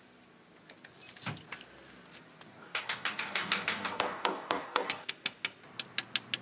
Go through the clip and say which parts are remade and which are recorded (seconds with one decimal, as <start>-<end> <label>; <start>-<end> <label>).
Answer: 0.0-2.6 recorded; 2.6-5.1 remade; 5.1-6.4 recorded